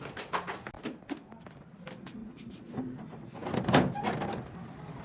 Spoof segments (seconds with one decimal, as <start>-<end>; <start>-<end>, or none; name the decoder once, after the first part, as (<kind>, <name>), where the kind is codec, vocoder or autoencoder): 2.2-2.7 (vocoder, Vocos)